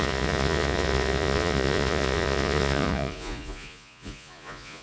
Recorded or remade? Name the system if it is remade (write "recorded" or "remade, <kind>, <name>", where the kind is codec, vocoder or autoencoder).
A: remade, vocoder, Vocos